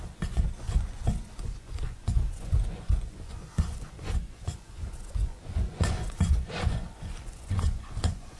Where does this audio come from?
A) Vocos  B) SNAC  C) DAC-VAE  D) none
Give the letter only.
A